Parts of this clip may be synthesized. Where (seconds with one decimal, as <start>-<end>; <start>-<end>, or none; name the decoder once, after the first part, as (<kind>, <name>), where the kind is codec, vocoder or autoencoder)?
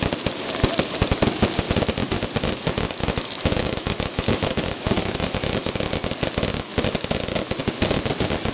3.0-5.9 (autoencoder, DAC-VAE)